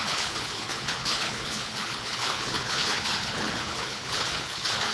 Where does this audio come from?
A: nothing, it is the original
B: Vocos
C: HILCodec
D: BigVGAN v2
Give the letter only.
C